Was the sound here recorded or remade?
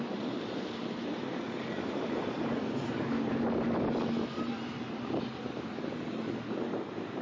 recorded